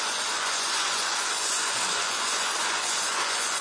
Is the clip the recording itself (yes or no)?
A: no